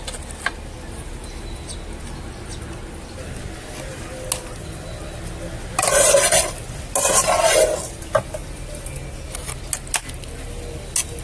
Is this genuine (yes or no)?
yes